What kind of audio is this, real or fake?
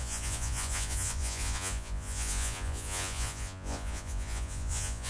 fake